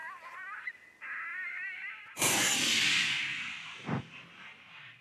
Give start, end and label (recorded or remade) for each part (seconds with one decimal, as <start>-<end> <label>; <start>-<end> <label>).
0.0-0.7 remade; 0.7-1.3 recorded; 1.3-1.9 remade; 1.9-3.3 recorded; 3.3-4.6 remade; 4.6-5.0 recorded